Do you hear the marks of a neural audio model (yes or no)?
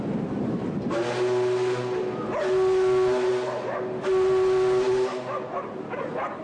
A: no